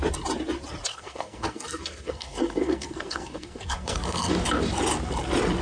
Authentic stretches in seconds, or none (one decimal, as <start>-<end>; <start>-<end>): 0.0-0.9; 4.3-5.6